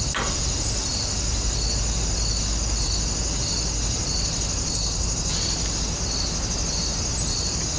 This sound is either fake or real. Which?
real